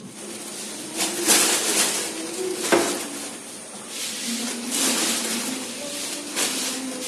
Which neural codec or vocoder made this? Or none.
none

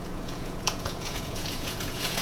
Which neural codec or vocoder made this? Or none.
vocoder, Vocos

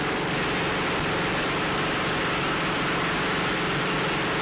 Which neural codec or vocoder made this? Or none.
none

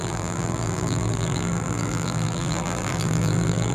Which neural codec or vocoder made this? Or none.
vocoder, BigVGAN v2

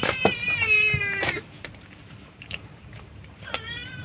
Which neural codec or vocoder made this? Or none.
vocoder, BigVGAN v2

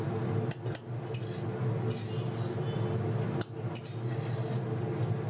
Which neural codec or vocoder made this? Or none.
none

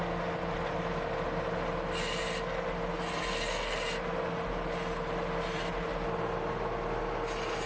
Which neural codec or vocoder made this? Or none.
none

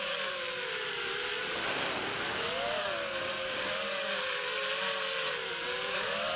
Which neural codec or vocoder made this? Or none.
none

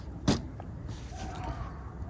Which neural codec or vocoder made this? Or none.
none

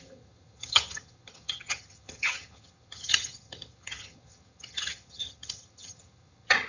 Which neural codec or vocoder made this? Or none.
vocoder, HiFi-GAN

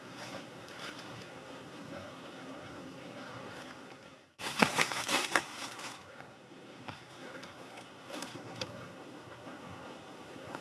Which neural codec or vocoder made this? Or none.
codec, SNAC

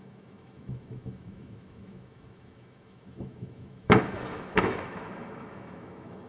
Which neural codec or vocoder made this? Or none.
autoencoder, DAC-VAE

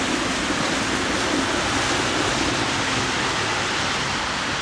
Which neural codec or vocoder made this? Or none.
none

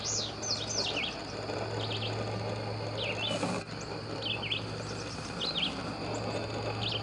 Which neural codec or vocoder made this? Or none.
none